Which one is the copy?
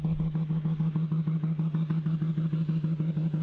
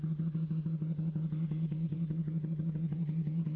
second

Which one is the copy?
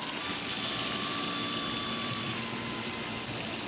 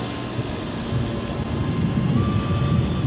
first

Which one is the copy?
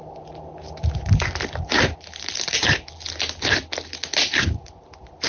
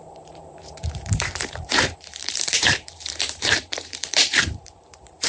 second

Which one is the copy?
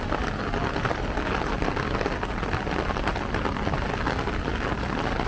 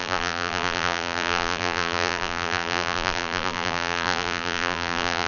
second